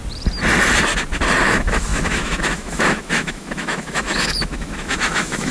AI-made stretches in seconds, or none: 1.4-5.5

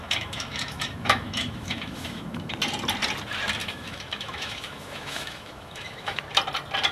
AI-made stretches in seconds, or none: 0.0-2.5; 3.6-6.2

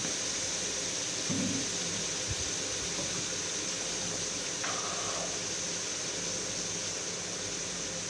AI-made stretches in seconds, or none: none

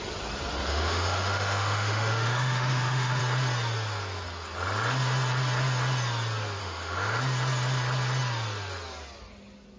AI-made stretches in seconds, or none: 0.7-3.2; 6.6-7.2